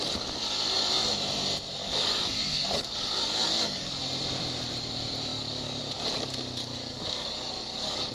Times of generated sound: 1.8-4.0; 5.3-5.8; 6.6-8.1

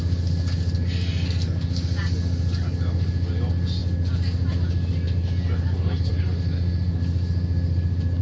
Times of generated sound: none